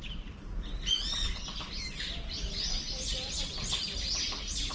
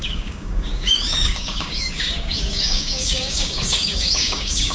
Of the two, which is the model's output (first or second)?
second